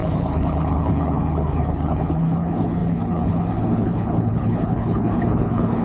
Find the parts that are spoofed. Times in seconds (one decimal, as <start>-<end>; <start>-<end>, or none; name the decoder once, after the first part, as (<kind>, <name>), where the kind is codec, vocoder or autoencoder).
0.0-5.8 (codec, HILCodec)

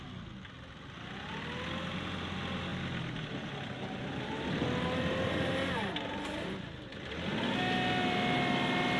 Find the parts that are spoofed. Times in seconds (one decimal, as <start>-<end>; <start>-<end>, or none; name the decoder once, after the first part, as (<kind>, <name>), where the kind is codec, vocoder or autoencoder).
none

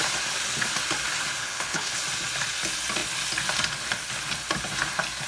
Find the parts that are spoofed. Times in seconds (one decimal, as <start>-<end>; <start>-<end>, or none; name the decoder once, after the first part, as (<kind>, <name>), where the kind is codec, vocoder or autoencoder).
1.4-2.0 (codec, HILCodec)

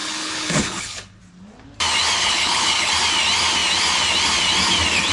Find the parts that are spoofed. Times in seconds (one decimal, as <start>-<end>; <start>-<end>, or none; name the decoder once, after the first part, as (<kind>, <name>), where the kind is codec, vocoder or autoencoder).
0.0-1.2 (codec, HILCodec); 2.2-2.9

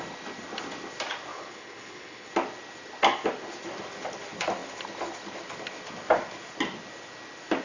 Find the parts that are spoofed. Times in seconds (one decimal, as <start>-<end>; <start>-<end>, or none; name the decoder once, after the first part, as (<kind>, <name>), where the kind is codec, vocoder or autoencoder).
1.3-2.3 (codec, HILCodec)

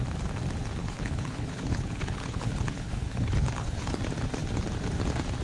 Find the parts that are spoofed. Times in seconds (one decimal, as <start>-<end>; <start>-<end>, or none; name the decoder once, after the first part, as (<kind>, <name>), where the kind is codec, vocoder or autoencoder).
0.8-4.0 (codec, HILCodec)